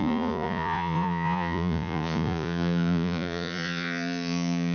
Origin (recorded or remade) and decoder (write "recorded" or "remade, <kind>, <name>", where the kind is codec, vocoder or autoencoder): remade, vocoder, Vocos